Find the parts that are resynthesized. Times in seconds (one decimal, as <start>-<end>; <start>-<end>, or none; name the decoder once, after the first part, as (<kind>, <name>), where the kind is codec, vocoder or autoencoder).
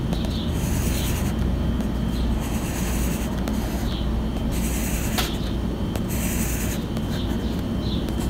none